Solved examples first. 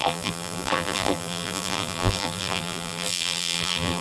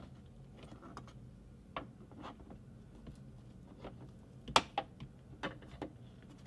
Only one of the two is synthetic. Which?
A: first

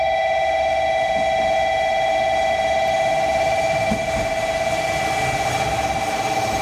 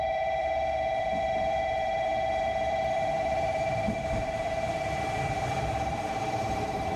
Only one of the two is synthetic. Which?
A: second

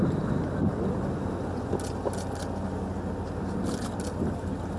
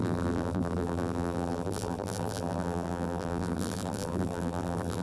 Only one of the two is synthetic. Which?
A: second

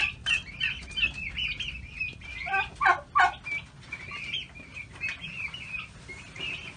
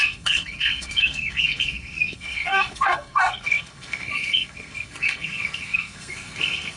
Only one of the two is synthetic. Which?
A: second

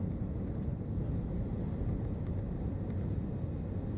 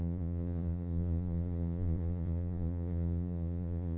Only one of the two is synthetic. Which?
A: second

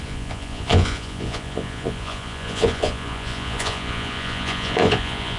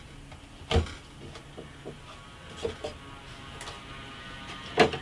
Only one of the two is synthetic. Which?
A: first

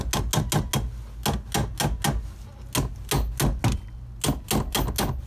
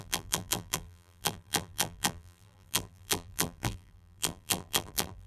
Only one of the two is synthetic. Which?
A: second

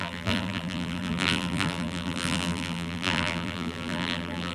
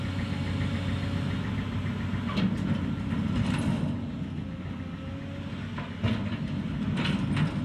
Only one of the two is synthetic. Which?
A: first